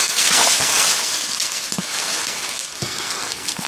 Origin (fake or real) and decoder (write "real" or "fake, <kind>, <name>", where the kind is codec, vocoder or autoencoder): fake, codec, SNAC